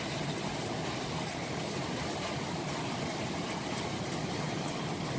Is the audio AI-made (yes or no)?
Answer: no